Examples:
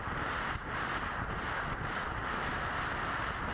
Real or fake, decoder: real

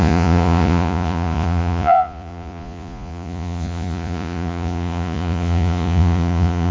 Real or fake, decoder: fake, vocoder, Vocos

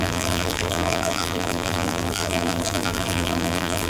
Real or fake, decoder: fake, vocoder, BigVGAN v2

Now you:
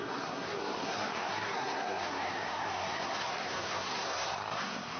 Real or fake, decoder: fake, codec, SNAC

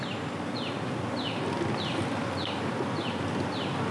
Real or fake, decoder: real